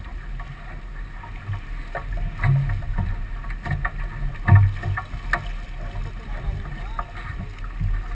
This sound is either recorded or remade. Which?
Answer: recorded